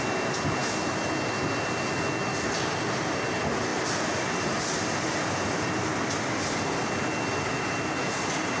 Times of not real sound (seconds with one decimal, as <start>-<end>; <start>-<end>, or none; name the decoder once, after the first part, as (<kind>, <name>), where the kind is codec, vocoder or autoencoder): none